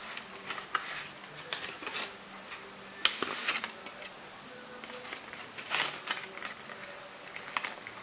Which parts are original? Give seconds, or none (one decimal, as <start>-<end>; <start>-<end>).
0.0-8.0